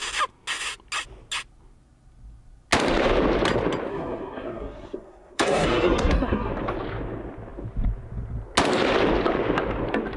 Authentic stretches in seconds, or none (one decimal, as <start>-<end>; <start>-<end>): 0.0-3.9; 6.5-10.2